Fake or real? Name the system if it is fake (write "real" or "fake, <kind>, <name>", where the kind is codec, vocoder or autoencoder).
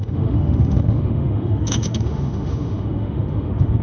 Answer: fake, autoencoder, DAC-VAE